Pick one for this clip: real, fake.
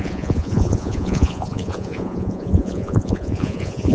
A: fake